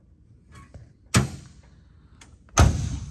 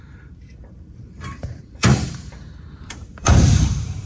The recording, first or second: first